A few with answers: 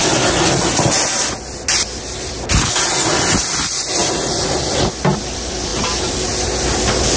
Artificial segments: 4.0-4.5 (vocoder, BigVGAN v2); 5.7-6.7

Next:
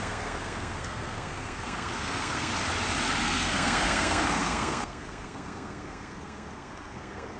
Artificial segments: 0.0-2.5 (codec, SNAC); 3.2-7.4

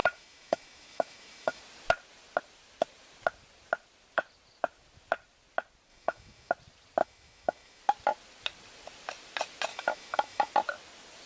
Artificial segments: 0.0-1.6 (autoencoder, DAC-VAE); 5.9-6.5; 7.0-7.8; 9.7-10.5

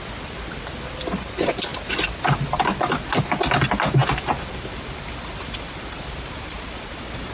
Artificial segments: 4.0-7.3 (vocoder, BigVGAN v2)

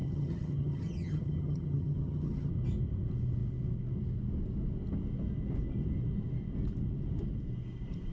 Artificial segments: 0.0-2.5 (vocoder, HiFi-GAN)

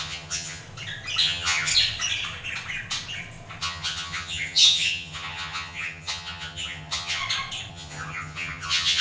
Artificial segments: 0.0-0.6 (vocoder, HiFi-GAN); 1.2-1.7; 3.6-7.2; 7.7-9.0